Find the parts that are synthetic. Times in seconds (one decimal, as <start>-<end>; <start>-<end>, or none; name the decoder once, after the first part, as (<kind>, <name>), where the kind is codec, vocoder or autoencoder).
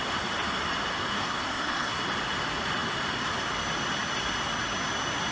1.1-2.0 (codec, SNAC)